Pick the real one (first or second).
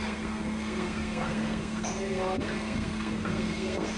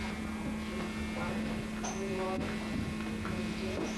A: second